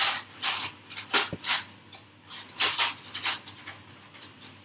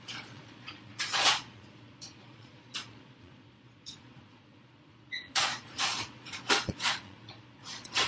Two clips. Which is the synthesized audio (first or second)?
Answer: second